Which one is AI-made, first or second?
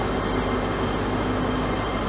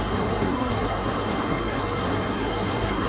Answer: second